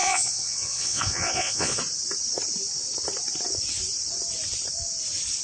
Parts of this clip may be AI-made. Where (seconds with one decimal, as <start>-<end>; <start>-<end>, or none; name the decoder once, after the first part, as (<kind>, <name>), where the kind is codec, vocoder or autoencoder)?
0.0-1.8 (vocoder, Vocos)